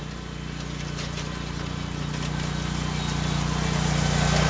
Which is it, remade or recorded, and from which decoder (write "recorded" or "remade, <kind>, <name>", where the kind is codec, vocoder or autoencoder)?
recorded